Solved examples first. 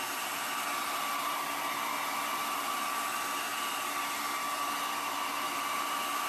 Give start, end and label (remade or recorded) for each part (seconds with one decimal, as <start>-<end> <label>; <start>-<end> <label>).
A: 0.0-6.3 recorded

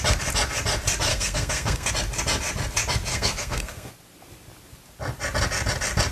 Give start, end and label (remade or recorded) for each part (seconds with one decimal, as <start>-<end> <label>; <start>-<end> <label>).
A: 0.0-1.1 recorded; 1.1-1.9 remade; 1.9-3.1 recorded; 3.1-3.9 remade; 3.9-6.1 recorded

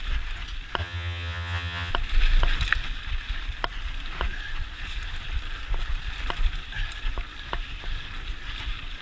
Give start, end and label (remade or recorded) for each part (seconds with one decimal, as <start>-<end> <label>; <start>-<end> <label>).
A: 0.0-0.8 recorded; 0.8-1.9 remade; 1.9-9.0 recorded

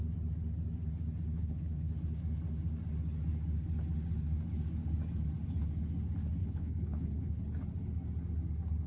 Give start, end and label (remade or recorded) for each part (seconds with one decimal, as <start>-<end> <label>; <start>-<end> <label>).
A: 0.0-1.3 recorded; 1.3-1.9 remade; 1.9-6.4 recorded; 6.4-7.4 remade; 7.4-8.9 recorded

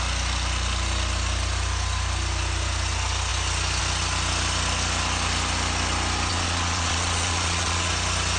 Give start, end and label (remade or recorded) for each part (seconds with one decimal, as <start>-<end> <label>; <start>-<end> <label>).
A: 0.0-6.3 recorded; 6.3-7.9 remade; 7.9-8.4 recorded

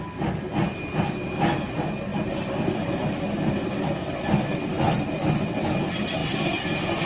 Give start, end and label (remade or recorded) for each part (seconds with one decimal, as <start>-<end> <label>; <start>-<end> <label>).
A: 0.0-2.1 recorded; 2.1-2.7 remade; 2.7-6.2 recorded; 6.2-7.0 remade